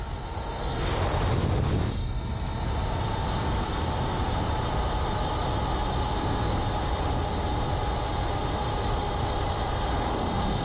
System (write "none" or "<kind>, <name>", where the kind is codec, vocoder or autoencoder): none